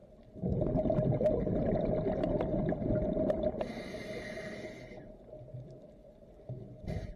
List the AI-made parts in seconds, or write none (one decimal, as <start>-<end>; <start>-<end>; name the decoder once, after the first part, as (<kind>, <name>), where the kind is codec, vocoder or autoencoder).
none